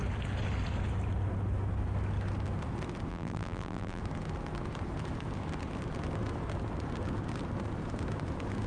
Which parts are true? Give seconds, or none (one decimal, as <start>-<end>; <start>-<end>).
0.0-3.1; 4.0-8.7